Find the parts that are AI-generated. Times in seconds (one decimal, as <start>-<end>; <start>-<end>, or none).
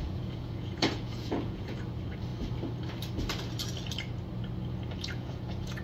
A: 0.0-1.8; 5.0-5.8